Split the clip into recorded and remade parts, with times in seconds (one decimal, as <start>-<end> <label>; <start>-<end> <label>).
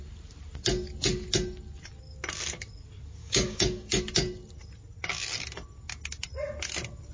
0.0-3.2 recorded; 3.2-4.0 remade; 4.0-7.1 recorded